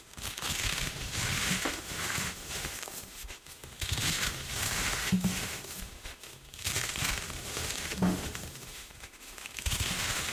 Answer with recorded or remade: remade